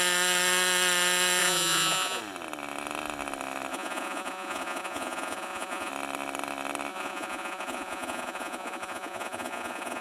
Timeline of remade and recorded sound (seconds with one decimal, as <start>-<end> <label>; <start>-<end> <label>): 0.0-1.4 recorded; 1.4-2.2 remade; 2.2-3.7 recorded; 3.7-5.9 remade; 5.9-6.9 recorded; 6.9-10.0 remade